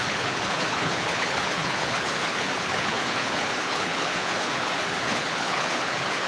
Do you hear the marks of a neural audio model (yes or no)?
yes